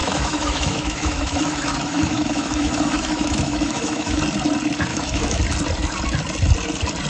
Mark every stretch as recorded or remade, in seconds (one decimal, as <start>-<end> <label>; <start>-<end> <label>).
0.0-4.2 remade; 4.2-4.9 recorded; 4.9-5.4 remade; 5.4-7.1 recorded